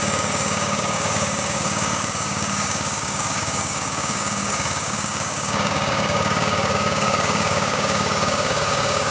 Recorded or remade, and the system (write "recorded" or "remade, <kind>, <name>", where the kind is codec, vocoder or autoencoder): remade, codec, DAC